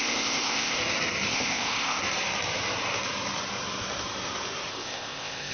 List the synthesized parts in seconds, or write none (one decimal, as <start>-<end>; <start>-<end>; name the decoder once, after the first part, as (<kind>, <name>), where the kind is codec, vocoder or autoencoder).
0.0-0.8 (codec, ZipCodec); 1.3-2.0; 4.7-5.5